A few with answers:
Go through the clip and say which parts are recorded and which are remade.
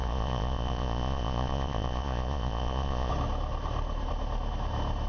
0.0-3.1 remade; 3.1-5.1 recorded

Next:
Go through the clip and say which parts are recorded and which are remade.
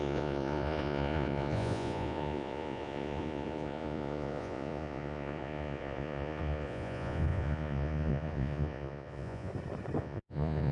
0.0-9.5 remade; 9.5-10.0 recorded; 10.0-10.7 remade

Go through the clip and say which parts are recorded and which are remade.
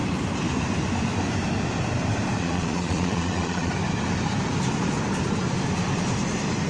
0.0-2.4 recorded; 2.4-3.7 remade; 3.7-6.7 recorded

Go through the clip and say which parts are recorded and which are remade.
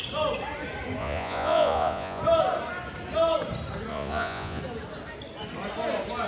0.0-1.0 recorded; 1.0-2.2 remade; 2.2-3.9 recorded; 3.9-4.6 remade; 4.6-6.3 recorded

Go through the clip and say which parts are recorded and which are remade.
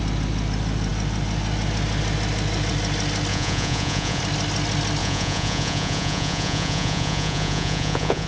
0.0-3.3 recorded; 3.3-4.2 remade; 4.2-5.0 recorded; 5.0-8.3 remade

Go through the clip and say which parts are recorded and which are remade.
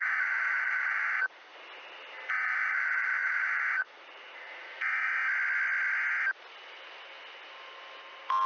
0.0-1.5 remade; 1.5-2.3 recorded; 2.3-5.2 remade; 5.2-8.5 recorded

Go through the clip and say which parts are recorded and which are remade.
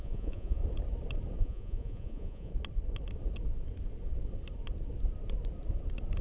0.0-0.6 remade; 0.6-1.4 recorded; 1.4-2.5 remade; 2.5-6.2 recorded